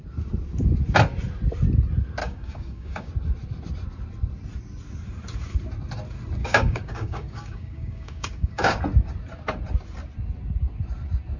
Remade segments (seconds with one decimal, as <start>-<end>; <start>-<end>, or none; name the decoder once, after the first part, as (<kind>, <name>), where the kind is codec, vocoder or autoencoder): 2.2-3.1 (codec, DAC); 6.4-8.8